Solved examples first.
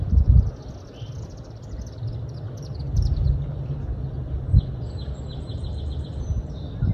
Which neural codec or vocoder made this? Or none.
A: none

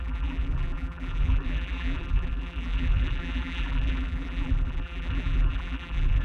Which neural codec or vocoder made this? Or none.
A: vocoder, BigVGAN v2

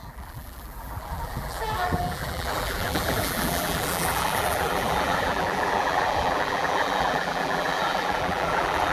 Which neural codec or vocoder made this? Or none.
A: vocoder, BigVGAN v2